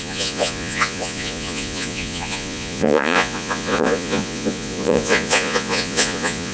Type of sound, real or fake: fake